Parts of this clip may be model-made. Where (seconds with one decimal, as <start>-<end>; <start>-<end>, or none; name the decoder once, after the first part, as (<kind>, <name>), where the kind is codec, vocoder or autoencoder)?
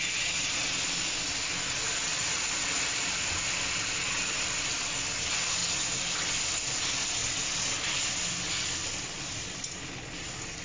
2.1-3.3 (vocoder, BigVGAN v2)